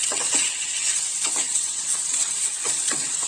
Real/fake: fake